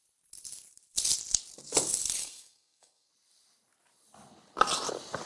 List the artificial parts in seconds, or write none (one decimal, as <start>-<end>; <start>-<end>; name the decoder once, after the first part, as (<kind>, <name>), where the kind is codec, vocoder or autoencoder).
2.2-3.1 (codec, SNAC)